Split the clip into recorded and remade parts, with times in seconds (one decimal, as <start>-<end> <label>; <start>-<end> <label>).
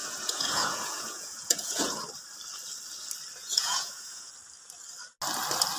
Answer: 0.0-2.0 remade; 2.0-3.4 recorded; 3.4-4.3 remade; 4.3-5.8 recorded